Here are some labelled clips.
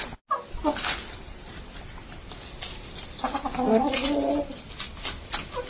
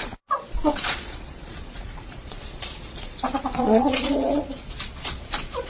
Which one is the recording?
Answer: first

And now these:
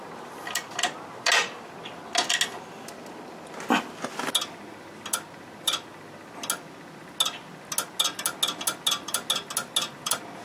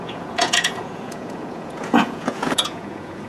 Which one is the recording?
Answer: first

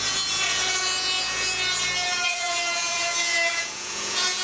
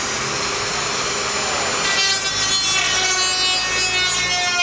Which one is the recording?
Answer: second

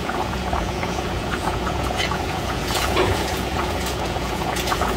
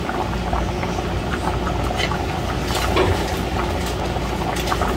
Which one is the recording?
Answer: second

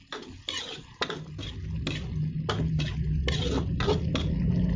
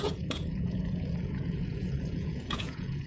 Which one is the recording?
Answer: first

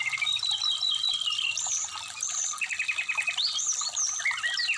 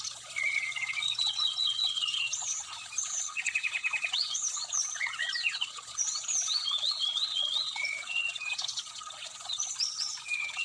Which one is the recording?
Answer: first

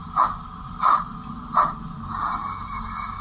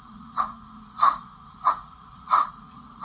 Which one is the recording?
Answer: first